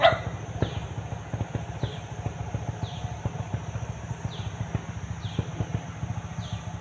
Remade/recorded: recorded